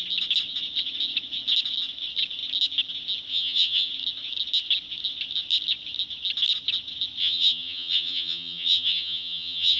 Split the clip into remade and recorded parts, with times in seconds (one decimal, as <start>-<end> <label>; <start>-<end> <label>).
0.0-3.3 recorded; 3.3-3.9 remade; 3.9-7.2 recorded; 7.2-9.8 remade